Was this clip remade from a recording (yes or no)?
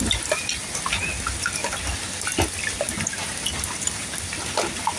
no